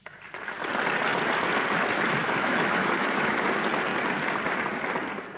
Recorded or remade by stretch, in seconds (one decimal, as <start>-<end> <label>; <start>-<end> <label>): 0.0-2.2 recorded; 2.2-3.3 remade; 3.3-5.4 recorded